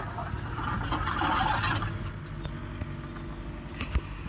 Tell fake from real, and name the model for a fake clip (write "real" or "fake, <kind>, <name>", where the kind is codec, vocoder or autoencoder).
real